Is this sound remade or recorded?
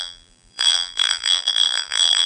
remade